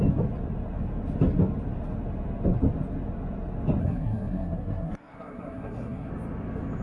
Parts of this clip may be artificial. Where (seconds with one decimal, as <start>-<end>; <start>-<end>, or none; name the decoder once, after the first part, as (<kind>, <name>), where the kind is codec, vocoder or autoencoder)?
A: 3.8-6.1 (codec, SNAC)

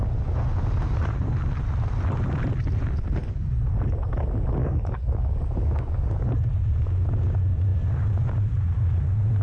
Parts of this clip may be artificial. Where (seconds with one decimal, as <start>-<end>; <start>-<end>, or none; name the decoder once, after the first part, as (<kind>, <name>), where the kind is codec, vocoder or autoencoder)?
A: 3.2-3.7 (codec, DAC); 4.6-6.3

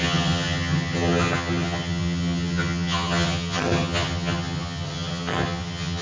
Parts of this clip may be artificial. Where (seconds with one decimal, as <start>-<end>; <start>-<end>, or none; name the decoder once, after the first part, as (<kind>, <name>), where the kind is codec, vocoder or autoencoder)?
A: 0.0-6.0 (vocoder, HiFi-GAN)

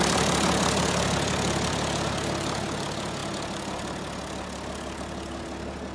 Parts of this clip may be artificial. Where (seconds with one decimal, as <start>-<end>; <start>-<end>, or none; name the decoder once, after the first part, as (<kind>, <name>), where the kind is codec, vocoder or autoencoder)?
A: none

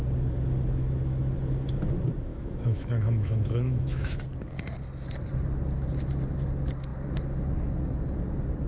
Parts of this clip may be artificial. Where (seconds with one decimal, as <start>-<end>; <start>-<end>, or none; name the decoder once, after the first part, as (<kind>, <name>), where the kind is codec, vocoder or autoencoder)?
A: 2.3-4.2 (autoencoder, DAC-VAE)

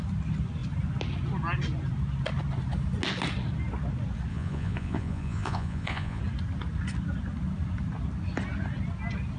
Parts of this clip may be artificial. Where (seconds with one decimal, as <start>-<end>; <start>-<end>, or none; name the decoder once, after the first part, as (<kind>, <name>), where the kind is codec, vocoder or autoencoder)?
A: 4.3-6.2 (vocoder, Vocos)